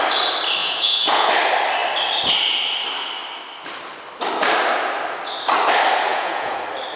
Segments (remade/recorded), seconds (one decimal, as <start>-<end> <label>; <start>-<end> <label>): 0.0-0.6 recorded; 0.6-1.3 remade; 1.3-6.1 recorded; 6.1-6.6 remade; 6.6-7.0 recorded

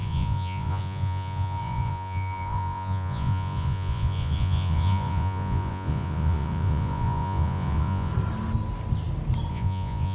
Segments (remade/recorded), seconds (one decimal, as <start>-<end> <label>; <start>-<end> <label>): 0.0-8.1 remade; 8.1-9.5 recorded; 9.5-10.1 remade